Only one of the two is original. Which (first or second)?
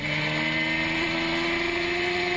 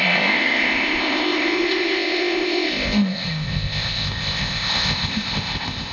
first